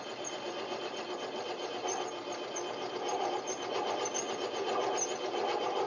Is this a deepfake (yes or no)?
no